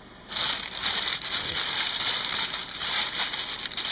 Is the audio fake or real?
fake